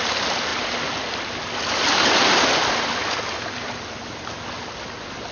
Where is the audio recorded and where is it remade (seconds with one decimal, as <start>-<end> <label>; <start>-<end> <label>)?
0.0-5.3 recorded